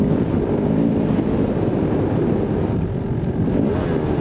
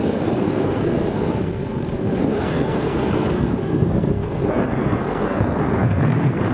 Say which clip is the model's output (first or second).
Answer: second